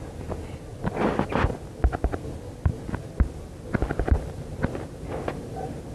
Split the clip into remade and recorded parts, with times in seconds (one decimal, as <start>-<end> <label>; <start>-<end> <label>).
0.0-5.9 recorded